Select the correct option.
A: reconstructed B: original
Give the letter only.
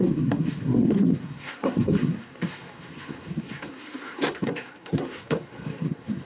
A